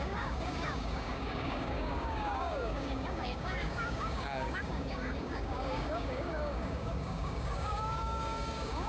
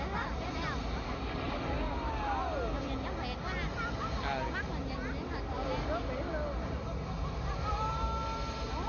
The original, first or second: second